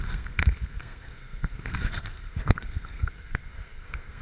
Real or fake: fake